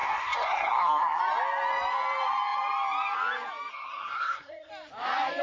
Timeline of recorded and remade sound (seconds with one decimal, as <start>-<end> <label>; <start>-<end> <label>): 0.0-1.2 remade; 1.2-3.7 recorded; 3.7-4.7 remade; 4.7-5.4 recorded